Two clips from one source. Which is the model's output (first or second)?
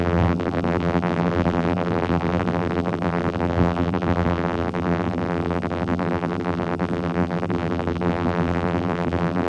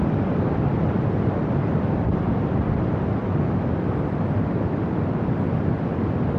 first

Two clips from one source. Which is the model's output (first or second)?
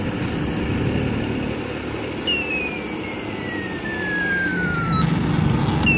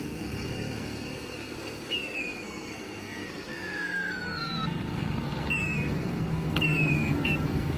second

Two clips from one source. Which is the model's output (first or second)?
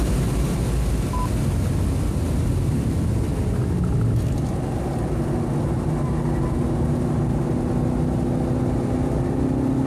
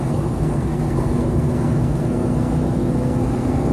second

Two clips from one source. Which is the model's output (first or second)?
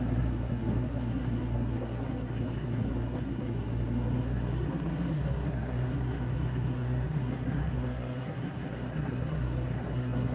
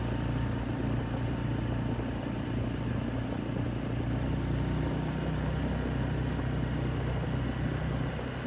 first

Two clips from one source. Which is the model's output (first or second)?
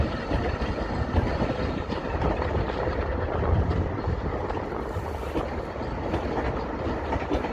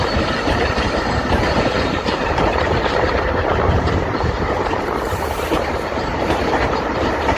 second